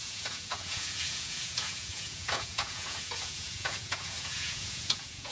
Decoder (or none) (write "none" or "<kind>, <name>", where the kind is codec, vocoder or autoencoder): vocoder, Vocos